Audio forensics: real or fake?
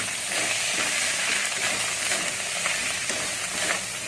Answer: real